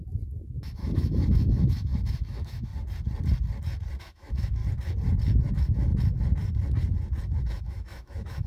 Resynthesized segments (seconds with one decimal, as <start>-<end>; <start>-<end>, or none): 0.0-2.7; 4.0-4.6; 5.5-5.9; 7.4-8.5